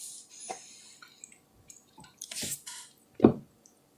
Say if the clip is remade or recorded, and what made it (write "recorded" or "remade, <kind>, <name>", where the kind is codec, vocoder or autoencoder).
recorded